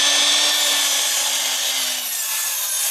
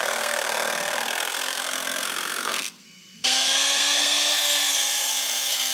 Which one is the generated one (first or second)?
second